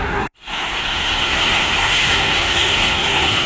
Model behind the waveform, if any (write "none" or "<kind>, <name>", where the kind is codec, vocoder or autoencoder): codec, SNAC